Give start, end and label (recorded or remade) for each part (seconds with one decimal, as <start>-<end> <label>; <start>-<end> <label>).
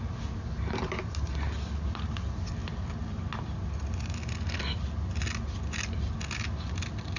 0.0-2.6 recorded; 2.6-3.2 remade; 3.2-7.2 recorded